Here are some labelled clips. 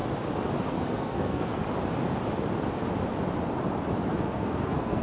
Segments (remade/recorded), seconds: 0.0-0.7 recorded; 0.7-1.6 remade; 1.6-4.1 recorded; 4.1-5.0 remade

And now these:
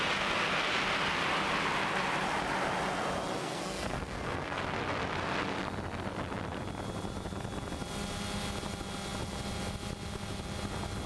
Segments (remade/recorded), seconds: 0.0-3.4 recorded; 3.4-4.6 remade; 4.6-11.1 recorded

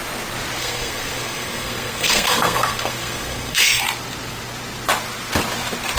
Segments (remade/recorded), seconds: 0.0-0.6 recorded; 0.6-3.8 remade; 3.8-6.0 recorded

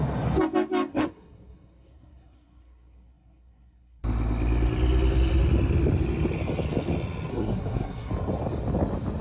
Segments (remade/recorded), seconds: 0.0-0.9 recorded; 0.9-4.0 remade; 4.0-7.3 recorded; 7.3-8.1 remade; 8.1-9.2 recorded